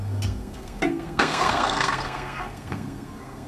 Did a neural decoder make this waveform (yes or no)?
yes